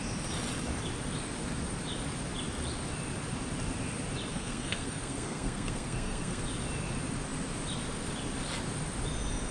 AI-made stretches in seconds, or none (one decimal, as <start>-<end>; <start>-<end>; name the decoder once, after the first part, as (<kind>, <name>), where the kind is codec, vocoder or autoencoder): 4.3-6.4 (codec, SNAC)